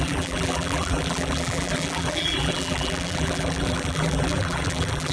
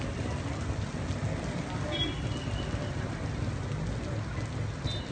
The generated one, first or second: first